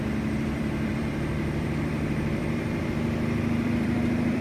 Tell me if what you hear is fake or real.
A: fake